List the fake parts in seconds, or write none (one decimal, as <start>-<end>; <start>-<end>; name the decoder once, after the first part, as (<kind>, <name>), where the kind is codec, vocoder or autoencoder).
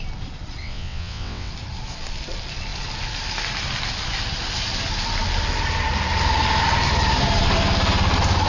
0.6-1.5 (vocoder, WaveNeXt)